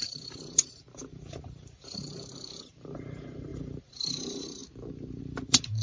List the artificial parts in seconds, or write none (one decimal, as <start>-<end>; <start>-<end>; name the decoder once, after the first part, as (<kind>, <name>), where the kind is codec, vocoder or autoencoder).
0.0-4.6 (vocoder, BigVGAN v2); 5.2-5.8